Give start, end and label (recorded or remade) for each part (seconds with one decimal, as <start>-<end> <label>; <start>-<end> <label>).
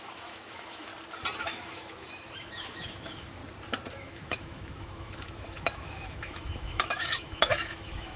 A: 0.0-0.9 remade; 0.9-1.4 recorded; 1.4-3.4 remade; 3.4-4.0 recorded; 4.0-8.2 remade